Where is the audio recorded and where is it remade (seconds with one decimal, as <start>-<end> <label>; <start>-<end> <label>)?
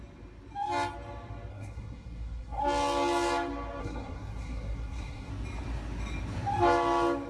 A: 0.0-1.5 recorded; 1.5-2.6 remade; 2.6-3.8 recorded; 3.8-5.3 remade; 5.3-7.3 recorded